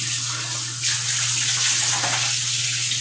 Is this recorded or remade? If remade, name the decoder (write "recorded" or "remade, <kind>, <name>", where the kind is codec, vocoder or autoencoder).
recorded